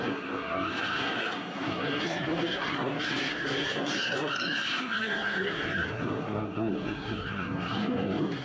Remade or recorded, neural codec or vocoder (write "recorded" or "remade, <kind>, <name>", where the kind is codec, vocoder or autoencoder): remade, codec, SNAC